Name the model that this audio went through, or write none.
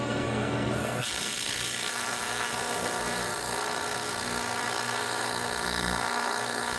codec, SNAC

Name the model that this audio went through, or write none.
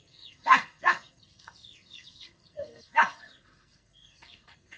codec, SNAC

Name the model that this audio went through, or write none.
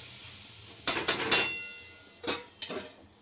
none